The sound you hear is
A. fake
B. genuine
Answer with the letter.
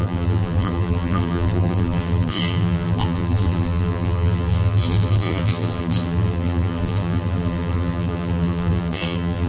A